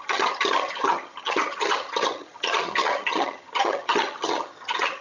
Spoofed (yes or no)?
yes